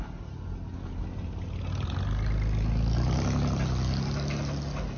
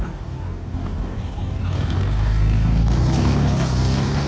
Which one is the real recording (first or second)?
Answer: first